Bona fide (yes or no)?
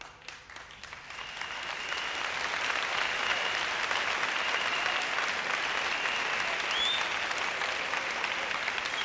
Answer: yes